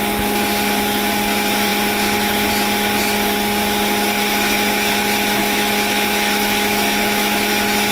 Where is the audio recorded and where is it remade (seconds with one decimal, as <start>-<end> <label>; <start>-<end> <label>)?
0.0-5.4 recorded; 5.4-7.5 remade; 7.5-7.9 recorded